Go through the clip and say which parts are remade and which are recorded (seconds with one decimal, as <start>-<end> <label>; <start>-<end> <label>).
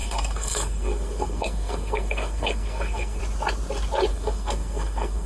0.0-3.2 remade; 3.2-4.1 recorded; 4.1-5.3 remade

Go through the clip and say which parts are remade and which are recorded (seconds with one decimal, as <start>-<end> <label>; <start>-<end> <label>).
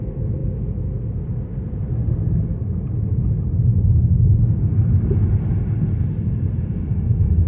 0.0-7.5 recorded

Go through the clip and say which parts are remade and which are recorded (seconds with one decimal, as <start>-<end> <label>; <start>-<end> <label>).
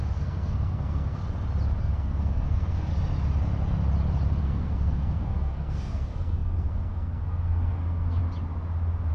0.0-1.2 remade; 1.2-1.8 recorded; 1.8-2.9 remade; 2.9-4.4 recorded; 4.4-8.2 remade; 8.2-9.1 recorded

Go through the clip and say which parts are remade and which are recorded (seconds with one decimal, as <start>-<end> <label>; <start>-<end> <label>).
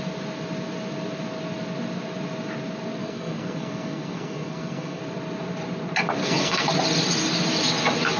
0.0-3.0 recorded; 3.0-5.0 remade; 5.0-6.2 recorded; 6.2-6.7 remade; 6.7-8.2 recorded